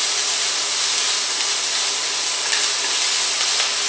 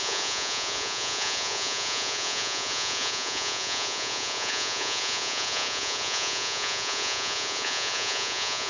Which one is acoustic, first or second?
first